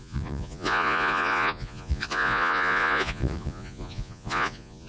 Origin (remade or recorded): remade